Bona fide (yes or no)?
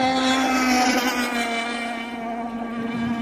yes